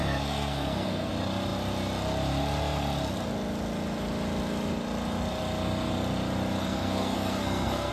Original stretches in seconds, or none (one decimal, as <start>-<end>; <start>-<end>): 1.1-6.6